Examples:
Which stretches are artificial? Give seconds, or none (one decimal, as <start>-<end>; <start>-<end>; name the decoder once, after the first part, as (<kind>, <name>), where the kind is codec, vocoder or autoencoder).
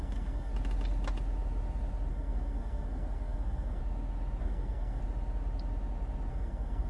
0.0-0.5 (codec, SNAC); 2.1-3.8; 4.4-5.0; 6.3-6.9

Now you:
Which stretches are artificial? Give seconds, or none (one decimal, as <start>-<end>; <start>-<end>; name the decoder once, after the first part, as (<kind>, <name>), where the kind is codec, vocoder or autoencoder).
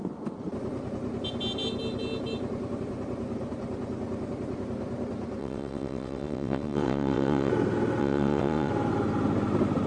5.4-7.5 (vocoder, WaveNeXt); 8.0-8.7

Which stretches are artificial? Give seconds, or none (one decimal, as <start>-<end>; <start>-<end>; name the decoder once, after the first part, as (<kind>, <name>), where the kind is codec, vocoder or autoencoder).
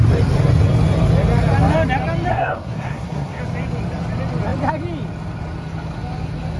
2.3-3.4 (codec, SNAC)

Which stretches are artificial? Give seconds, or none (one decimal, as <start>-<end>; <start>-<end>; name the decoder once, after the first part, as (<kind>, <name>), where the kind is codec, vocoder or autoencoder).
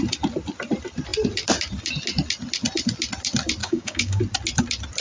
3.6-4.2 (codec, DAC)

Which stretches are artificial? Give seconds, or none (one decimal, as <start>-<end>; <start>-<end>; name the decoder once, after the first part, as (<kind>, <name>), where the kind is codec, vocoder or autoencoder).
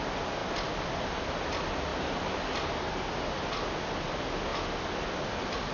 none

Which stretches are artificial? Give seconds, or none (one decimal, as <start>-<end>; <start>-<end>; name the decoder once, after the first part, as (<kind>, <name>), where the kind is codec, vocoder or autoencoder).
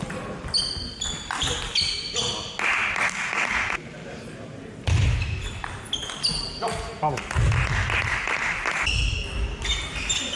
6.3-6.9 (vocoder, BigVGAN v2)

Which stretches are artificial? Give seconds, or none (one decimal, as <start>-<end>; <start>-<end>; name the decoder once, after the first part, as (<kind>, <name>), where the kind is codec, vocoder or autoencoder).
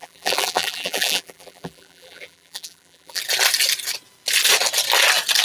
0.0-3.2 (vocoder, BigVGAN v2)